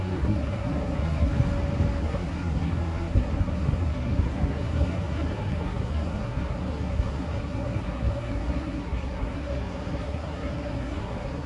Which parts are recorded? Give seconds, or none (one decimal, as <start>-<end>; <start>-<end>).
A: 1.3-2.0